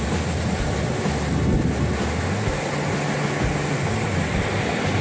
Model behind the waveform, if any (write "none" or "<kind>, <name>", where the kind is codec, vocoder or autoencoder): none